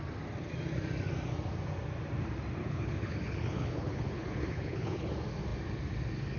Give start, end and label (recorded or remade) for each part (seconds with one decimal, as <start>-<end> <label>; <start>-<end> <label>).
0.0-2.6 recorded; 2.6-5.1 remade; 5.1-6.4 recorded

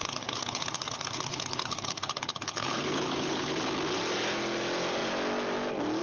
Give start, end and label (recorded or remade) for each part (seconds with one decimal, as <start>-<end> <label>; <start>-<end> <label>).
0.0-3.6 remade; 3.6-6.0 recorded

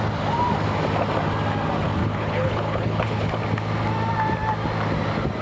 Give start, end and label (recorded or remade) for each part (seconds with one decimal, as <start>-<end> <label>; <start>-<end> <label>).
0.0-2.0 recorded; 2.0-3.3 remade; 3.3-5.4 recorded

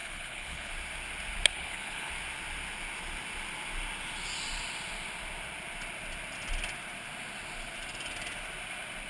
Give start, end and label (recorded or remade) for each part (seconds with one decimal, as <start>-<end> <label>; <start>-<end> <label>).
0.0-0.7 remade; 0.7-1.5 recorded; 1.5-2.1 remade; 2.1-9.1 recorded

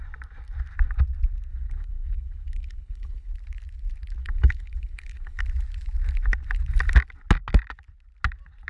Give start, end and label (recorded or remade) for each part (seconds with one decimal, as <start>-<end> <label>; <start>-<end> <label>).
0.0-1.5 recorded; 1.5-3.3 remade; 3.3-4.2 recorded; 4.2-5.4 remade; 5.4-8.7 recorded